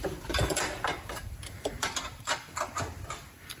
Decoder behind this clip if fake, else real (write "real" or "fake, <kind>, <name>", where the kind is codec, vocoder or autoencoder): fake, vocoder, BigVGAN v2